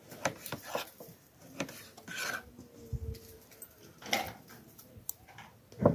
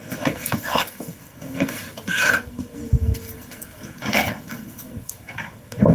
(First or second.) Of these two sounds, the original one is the first